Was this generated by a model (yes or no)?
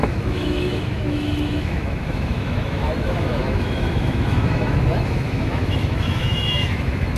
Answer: yes